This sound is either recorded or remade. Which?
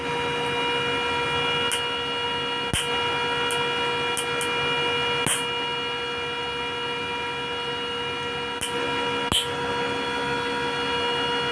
recorded